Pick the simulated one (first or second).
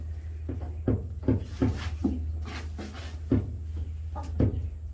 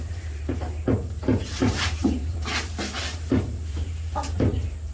second